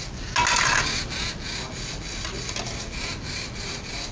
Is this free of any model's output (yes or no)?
yes